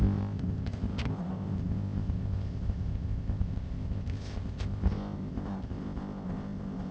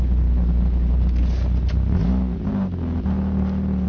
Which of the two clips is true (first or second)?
second